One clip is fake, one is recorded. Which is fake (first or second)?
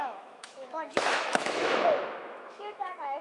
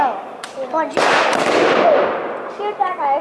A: first